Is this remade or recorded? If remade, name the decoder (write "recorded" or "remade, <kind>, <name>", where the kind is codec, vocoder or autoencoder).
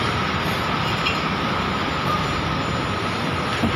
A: recorded